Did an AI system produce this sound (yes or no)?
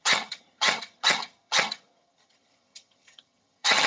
yes